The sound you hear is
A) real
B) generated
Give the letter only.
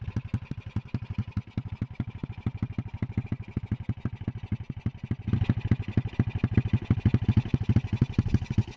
A